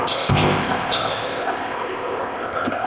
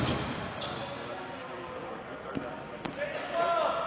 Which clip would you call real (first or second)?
second